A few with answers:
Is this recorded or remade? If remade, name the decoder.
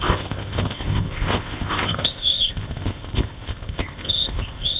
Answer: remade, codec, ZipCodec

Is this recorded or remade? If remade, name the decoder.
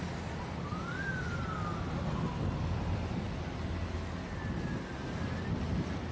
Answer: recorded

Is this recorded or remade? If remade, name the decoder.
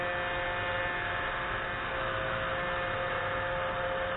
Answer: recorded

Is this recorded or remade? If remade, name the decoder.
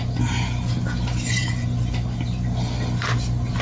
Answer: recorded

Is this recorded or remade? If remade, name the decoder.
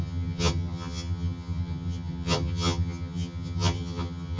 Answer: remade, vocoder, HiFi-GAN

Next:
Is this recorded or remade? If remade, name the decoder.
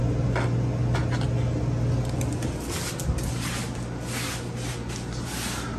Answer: recorded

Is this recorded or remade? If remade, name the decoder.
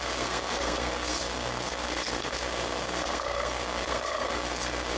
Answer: remade, codec, SNAC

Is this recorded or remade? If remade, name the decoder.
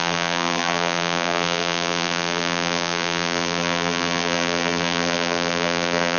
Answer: remade, vocoder, BigVGAN v2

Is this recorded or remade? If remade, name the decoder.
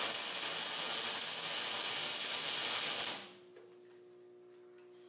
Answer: recorded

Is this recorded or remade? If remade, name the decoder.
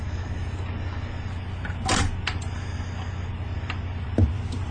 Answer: recorded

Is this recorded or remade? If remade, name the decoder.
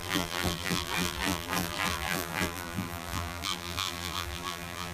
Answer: remade, vocoder, BigVGAN v2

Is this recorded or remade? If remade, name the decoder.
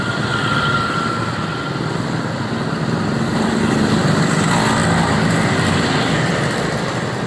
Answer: recorded